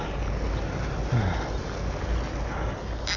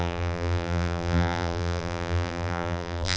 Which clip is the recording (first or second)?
first